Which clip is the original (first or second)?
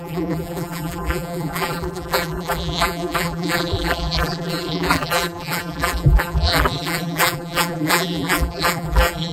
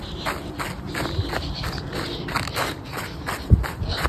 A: second